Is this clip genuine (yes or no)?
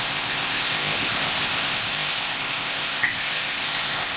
no